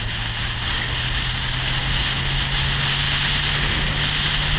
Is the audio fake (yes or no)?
no